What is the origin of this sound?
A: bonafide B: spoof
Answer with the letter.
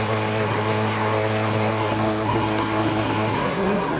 B